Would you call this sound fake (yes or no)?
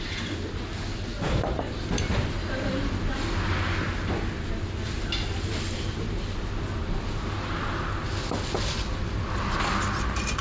no